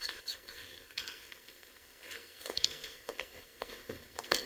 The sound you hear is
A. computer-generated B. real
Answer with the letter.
A